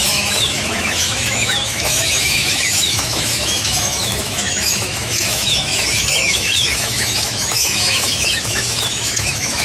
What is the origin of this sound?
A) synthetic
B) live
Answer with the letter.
A